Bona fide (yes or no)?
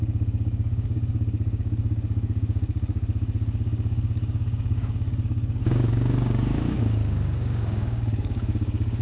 no